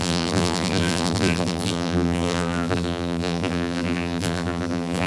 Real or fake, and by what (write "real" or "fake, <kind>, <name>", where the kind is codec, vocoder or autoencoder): fake, vocoder, BigVGAN v2